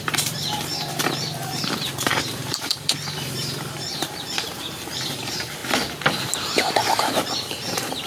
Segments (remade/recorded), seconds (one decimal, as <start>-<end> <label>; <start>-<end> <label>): 0.0-5.6 remade; 5.6-6.9 recorded; 6.9-8.1 remade